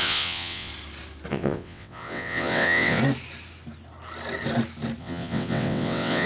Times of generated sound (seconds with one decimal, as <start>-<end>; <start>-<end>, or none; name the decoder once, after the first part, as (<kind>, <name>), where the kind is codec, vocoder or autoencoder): 0.0-0.7 (vocoder, WaveNeXt); 1.3-3.0; 5.0-6.3